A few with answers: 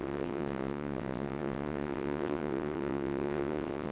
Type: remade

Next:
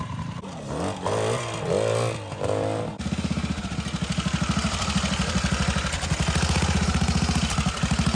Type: recorded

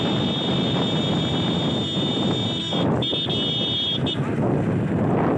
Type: recorded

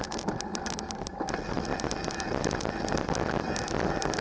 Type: recorded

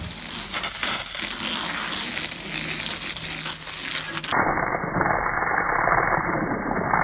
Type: recorded